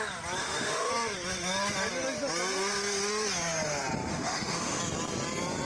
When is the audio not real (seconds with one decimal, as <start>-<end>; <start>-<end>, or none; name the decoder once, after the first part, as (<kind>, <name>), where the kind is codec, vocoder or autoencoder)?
0.4-0.9 (autoencoder, DAC-VAE); 4.1-4.8